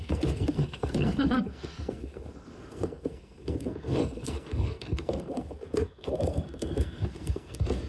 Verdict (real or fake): fake